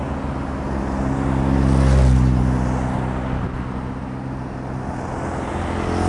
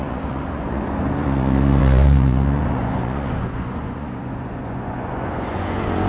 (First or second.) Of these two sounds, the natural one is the first